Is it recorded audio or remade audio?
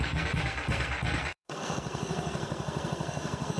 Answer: remade